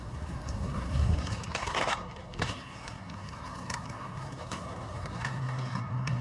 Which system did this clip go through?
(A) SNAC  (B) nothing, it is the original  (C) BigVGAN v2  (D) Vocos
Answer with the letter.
A